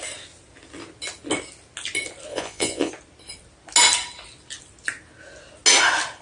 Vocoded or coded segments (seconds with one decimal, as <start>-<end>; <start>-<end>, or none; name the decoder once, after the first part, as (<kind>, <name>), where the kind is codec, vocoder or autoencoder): 2.3-2.9 (vocoder, Vocos)